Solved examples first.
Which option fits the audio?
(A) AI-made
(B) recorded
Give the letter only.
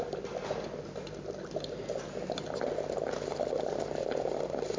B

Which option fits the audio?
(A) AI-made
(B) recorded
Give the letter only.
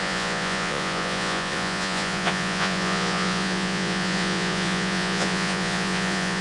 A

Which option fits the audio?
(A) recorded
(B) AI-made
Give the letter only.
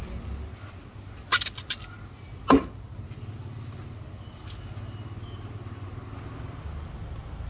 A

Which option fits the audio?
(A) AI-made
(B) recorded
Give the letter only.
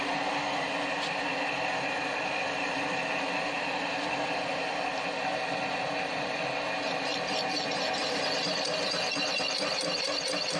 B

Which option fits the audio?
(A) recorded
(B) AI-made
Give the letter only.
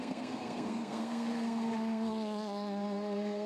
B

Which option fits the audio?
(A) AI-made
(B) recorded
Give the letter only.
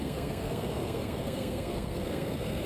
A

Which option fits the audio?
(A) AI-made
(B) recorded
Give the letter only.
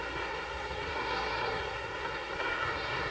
A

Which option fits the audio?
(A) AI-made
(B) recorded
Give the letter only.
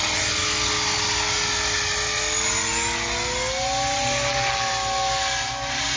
B